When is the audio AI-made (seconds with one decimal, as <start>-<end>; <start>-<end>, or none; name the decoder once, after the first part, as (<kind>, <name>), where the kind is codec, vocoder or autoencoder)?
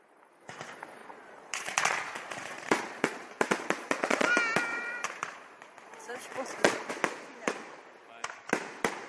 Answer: 1.0-4.3 (vocoder, Vocos); 4.7-6.9